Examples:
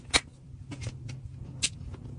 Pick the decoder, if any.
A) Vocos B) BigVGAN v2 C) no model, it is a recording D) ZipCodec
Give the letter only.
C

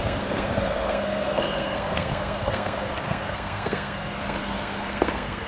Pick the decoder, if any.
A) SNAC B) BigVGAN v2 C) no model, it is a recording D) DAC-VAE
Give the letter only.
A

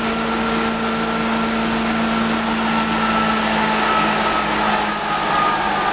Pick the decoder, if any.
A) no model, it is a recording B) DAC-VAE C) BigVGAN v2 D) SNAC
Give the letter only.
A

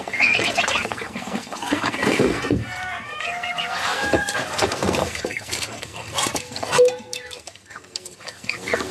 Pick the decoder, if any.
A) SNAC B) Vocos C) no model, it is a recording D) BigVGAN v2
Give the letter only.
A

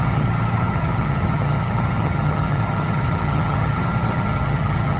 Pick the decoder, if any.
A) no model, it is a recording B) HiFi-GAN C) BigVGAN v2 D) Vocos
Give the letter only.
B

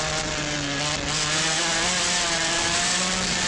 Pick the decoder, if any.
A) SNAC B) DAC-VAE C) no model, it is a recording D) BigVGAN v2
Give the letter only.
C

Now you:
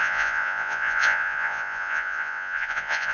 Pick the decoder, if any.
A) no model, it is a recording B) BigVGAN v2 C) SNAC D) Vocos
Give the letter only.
D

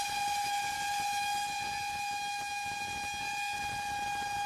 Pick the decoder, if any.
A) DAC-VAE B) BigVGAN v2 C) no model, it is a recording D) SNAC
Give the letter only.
C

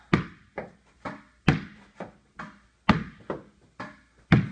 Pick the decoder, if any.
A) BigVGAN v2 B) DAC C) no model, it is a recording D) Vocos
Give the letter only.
C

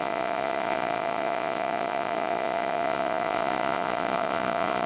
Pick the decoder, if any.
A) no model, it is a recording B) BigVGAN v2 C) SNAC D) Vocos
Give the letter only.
D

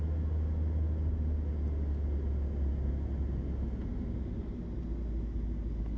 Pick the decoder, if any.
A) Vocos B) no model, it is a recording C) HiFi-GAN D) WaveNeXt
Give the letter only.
B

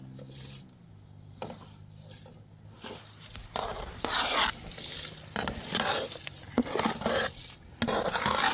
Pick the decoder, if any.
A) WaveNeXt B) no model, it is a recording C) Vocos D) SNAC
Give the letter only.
B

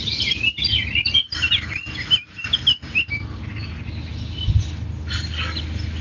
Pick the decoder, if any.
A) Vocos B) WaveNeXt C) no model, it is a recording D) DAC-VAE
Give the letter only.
C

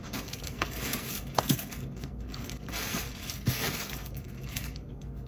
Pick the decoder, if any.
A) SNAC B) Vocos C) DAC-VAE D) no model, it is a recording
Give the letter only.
A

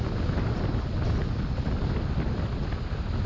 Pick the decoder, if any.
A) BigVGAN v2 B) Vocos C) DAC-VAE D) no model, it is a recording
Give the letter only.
D